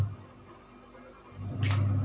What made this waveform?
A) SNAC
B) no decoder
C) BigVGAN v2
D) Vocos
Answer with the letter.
B